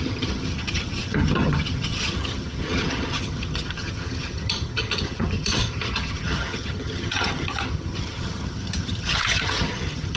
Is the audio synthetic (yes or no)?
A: yes